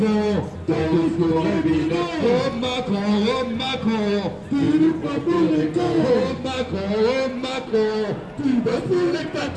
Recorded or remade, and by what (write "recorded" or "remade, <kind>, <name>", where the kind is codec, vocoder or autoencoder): recorded